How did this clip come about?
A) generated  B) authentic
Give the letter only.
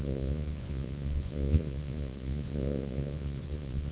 A